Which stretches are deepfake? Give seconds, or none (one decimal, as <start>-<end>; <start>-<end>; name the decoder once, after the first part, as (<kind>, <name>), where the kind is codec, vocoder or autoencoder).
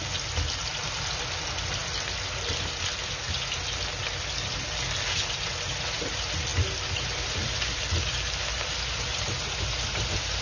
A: none